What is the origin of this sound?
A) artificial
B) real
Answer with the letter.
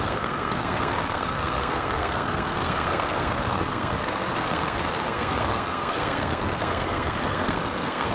A